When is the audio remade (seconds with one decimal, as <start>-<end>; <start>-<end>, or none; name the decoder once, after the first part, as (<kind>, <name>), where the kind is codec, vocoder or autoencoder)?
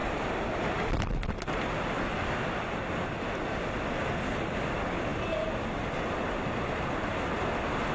none